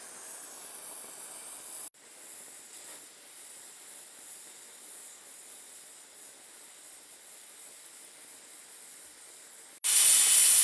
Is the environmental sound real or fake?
real